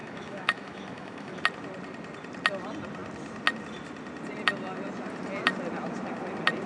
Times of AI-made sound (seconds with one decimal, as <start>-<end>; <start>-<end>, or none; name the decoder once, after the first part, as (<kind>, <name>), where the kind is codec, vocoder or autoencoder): 0.0-1.4 (autoencoder, DAC-VAE)